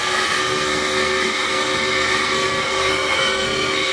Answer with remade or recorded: remade